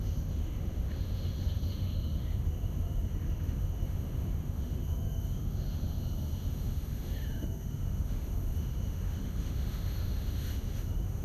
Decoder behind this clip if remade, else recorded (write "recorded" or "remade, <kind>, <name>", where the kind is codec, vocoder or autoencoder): remade, autoencoder, DAC-VAE